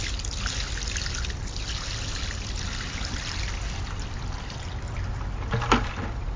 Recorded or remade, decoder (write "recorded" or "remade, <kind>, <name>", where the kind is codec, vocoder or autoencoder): recorded